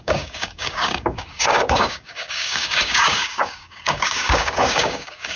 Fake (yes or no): yes